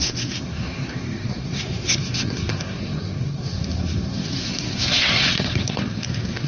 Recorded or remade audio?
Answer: remade